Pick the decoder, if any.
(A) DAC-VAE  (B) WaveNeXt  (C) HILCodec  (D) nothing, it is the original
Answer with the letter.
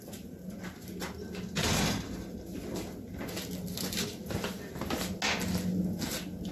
D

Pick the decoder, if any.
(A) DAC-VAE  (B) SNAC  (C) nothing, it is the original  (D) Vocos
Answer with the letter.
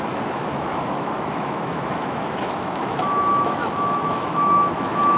A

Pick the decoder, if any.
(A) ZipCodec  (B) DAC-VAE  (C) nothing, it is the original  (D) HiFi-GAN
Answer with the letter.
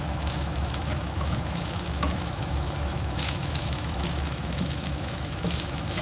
B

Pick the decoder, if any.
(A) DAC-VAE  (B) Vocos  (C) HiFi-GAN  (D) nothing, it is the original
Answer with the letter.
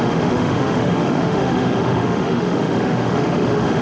A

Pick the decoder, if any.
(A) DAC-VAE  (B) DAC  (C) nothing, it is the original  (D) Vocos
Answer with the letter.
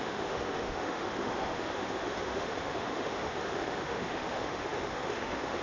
A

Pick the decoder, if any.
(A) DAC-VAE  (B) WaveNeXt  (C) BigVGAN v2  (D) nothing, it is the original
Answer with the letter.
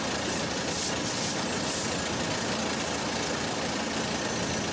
D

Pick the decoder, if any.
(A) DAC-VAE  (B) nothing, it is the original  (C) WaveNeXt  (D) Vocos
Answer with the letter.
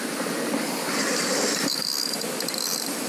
B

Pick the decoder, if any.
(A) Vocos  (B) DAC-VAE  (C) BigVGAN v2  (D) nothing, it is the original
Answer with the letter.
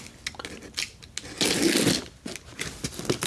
D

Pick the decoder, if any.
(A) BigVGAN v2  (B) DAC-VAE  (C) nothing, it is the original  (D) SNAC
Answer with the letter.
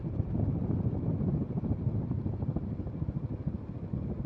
C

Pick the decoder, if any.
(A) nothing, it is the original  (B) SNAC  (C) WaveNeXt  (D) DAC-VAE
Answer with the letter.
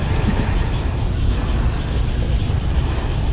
A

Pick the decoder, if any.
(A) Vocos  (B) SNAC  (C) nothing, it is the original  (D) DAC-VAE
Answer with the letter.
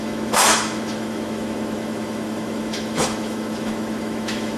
D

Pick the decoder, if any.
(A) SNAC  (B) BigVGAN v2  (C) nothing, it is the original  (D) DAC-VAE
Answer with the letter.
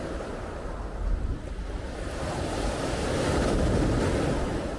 C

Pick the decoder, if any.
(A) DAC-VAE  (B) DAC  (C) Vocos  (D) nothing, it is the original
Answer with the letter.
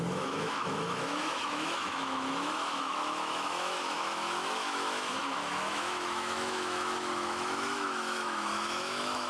A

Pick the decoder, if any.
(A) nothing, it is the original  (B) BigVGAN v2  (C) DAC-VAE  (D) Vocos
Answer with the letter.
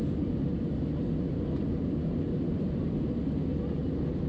A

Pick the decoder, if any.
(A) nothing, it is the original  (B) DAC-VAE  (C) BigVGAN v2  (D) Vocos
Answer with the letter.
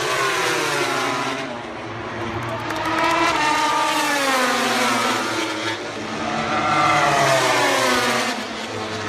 A